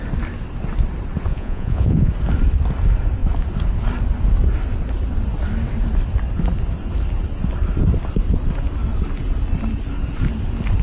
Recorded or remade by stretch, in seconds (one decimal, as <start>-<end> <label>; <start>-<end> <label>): 0.0-1.3 recorded; 1.3-2.1 remade; 2.1-10.8 recorded